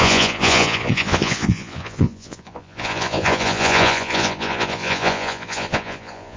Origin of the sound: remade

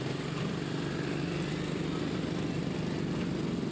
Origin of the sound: recorded